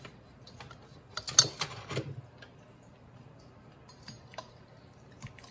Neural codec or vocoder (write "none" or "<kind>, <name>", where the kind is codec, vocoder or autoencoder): none